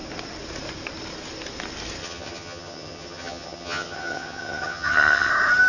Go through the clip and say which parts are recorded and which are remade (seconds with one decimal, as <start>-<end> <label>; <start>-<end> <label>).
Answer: 0.0-2.0 recorded; 2.0-5.3 remade; 5.3-5.7 recorded